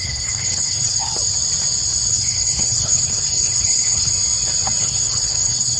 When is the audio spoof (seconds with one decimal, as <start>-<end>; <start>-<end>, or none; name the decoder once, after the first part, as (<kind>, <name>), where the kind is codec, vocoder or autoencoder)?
0.0-1.2 (codec, HILCodec); 2.1-4.1; 4.8-5.8